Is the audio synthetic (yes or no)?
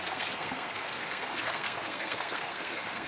yes